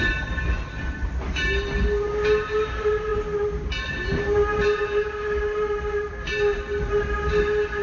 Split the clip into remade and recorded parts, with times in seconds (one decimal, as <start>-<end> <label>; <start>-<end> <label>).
0.0-7.8 recorded